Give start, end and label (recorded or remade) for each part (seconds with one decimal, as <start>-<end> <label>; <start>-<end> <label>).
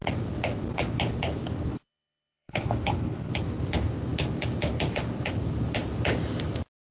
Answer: 0.0-1.7 recorded; 1.7-3.3 remade; 3.3-6.9 recorded